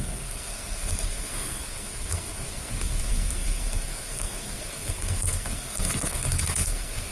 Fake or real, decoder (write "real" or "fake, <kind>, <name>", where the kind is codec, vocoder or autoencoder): fake, codec, SNAC